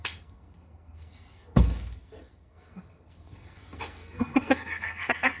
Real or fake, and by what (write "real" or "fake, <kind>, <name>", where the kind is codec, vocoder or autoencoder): fake, codec, SNAC